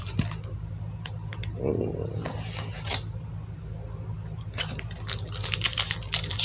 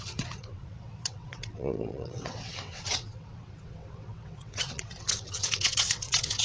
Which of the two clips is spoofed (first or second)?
second